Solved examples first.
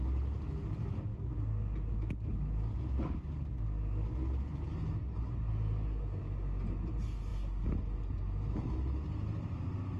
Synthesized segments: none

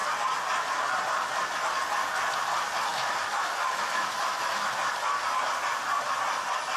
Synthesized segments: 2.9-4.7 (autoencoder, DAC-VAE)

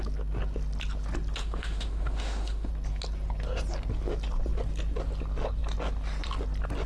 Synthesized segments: 1.4-2.7 (autoencoder, DAC-VAE)